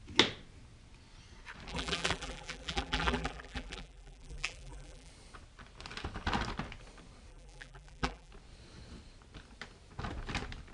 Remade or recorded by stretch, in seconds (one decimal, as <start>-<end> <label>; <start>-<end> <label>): 0.0-1.7 recorded; 1.7-5.1 remade; 5.1-7.3 recorded; 7.3-8.3 remade; 8.3-10.7 recorded